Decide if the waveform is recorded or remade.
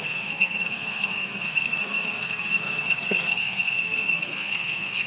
remade